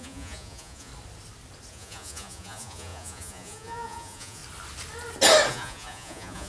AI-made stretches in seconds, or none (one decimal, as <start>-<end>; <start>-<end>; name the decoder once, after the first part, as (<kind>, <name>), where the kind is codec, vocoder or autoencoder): 0.0-0.9 (vocoder, Vocos); 1.7-4.4; 5.5-6.5

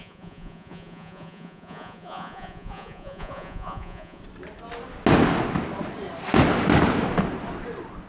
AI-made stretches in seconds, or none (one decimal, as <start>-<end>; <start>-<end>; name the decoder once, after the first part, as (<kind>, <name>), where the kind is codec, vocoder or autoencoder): 0.0-4.2 (vocoder, Vocos)

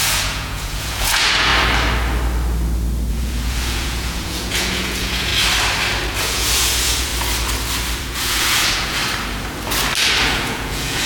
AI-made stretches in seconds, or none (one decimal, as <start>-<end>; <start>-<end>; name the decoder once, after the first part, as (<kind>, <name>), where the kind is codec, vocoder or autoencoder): 0.0-1.5 (vocoder, Vocos); 3.1-5.3; 6.2-7.1; 8.0-9.0; 10.3-11.1

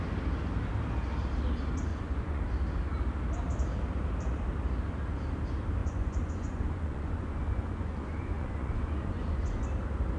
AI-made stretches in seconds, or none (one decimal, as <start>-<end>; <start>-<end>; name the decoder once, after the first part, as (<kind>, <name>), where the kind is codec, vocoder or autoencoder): 1.9-2.4 (vocoder, Vocos); 5.8-9.6

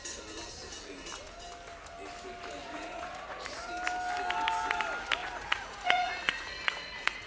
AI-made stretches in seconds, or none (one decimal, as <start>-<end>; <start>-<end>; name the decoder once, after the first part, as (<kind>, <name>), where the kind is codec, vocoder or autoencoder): 2.6-3.7 (vocoder, Vocos); 5.2-7.3